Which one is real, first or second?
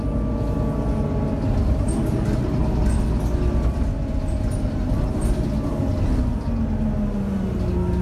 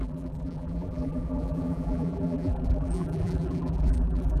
first